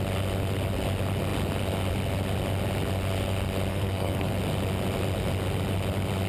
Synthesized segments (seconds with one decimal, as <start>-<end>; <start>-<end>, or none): 3.7-4.3